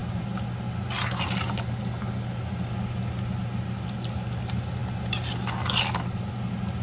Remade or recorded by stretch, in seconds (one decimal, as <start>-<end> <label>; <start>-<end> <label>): 0.0-6.8 recorded